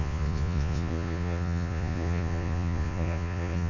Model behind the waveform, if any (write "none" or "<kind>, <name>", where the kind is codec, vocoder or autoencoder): vocoder, Vocos